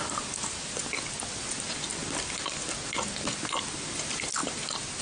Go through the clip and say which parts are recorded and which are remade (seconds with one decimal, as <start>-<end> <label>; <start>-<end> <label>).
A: 0.0-5.0 recorded